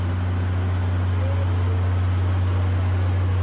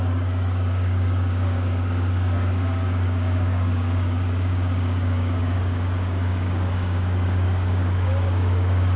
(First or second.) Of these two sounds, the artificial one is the second